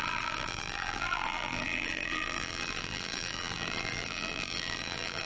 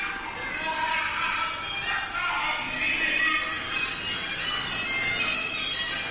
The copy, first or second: first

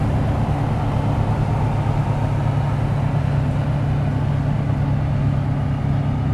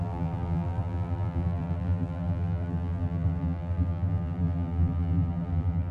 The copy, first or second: second